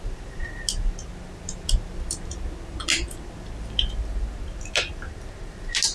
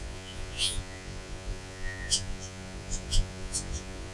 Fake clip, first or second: second